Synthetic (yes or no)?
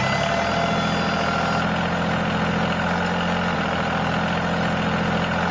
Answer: no